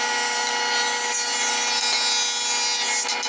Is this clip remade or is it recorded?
recorded